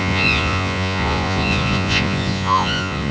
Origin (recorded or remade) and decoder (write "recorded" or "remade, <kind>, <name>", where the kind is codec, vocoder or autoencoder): remade, vocoder, Vocos